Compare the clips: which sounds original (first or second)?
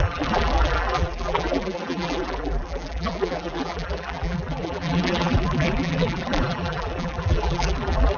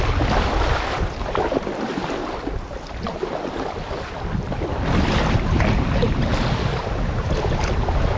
second